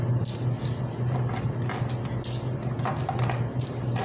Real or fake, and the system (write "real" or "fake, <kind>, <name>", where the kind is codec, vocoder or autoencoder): real